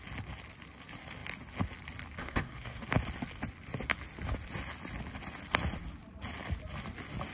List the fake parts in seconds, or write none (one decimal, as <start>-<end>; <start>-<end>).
2.2-2.8

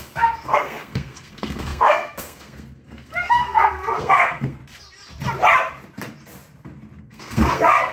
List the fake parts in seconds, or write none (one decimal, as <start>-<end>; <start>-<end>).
0.0-4.6; 7.0-7.9

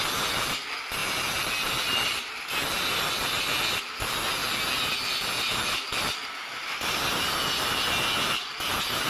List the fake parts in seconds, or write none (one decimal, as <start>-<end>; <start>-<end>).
none

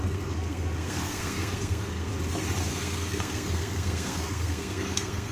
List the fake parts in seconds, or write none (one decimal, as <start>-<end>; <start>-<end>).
0.0-2.1; 2.7-5.3

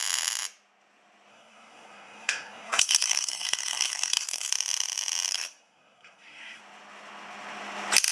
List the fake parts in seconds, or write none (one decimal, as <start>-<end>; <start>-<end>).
1.3-4.5; 5.3-6.6

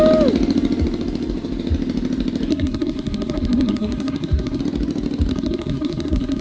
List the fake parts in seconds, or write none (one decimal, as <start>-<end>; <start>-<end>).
2.5-4.6; 5.3-6.4